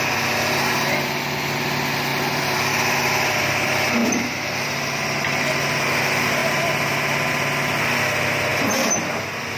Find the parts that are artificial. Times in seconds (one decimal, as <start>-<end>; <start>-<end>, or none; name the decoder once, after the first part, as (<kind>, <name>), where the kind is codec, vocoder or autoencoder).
2.1-2.7 (vocoder, BigVGAN v2); 4.0-5.6; 8.5-9.0